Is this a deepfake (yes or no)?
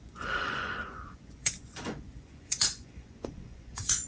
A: yes